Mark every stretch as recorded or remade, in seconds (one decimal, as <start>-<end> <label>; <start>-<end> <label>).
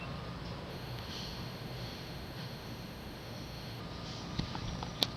0.0-0.7 recorded; 0.7-3.8 remade; 3.8-5.2 recorded